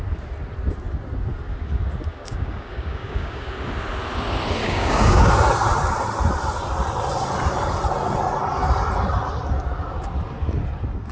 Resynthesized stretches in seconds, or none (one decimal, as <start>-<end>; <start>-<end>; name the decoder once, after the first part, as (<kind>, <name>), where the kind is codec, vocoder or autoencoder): 2.1-3.5 (codec, DAC); 4.6-5.3

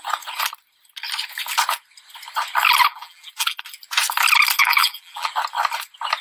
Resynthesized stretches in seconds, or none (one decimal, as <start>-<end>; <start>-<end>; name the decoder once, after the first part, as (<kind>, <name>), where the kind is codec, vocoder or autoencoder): 2.9-3.6 (vocoder, BigVGAN v2); 4.6-5.3

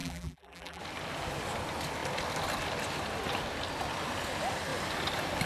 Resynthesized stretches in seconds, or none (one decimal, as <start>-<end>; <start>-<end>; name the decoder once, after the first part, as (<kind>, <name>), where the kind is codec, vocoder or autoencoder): 0.0-0.8 (vocoder, BigVGAN v2)

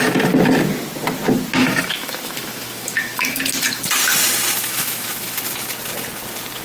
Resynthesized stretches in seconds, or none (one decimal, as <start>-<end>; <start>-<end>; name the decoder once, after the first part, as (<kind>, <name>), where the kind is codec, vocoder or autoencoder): 1.6-3.8 (autoencoder, DAC-VAE); 4.6-5.4